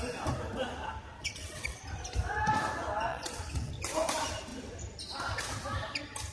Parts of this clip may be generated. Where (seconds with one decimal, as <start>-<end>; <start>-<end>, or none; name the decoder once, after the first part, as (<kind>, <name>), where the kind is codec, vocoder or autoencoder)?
1.2-1.8 (vocoder, WaveNeXt); 3.1-3.7

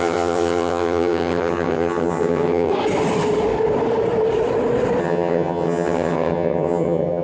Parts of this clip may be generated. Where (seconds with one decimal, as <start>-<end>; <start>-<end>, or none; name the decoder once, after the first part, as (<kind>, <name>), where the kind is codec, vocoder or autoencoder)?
0.0-2.7 (vocoder, HiFi-GAN); 5.0-7.2

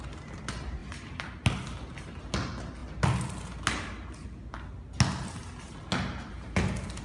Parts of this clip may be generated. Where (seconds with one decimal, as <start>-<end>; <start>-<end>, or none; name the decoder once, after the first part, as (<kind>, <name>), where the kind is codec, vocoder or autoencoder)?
none

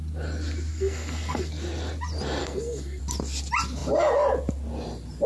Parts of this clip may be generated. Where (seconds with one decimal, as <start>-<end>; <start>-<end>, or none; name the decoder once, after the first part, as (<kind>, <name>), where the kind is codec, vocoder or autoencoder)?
0.7-1.5 (codec, SNAC); 2.4-3.0

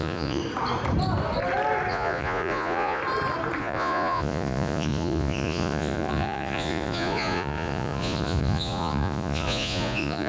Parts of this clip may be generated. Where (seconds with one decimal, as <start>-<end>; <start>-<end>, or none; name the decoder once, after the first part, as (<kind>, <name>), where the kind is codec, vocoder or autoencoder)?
0.0-0.4 (vocoder, Vocos); 1.9-3.0; 3.6-10.3

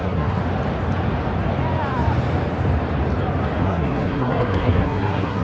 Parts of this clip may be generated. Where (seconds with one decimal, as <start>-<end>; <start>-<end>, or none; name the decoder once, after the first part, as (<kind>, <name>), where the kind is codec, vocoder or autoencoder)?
0.0-0.4 (codec, SNAC); 3.6-5.4